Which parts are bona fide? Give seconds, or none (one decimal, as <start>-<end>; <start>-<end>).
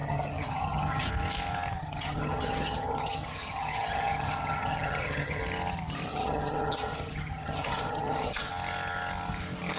1.1-1.8; 5.4-6.1; 8.5-9.8